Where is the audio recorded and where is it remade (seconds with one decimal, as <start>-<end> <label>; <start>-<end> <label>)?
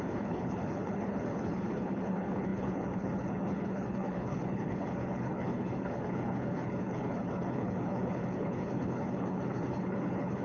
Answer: 0.0-10.4 remade